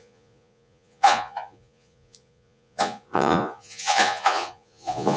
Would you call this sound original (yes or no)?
no